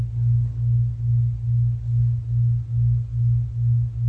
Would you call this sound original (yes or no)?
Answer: yes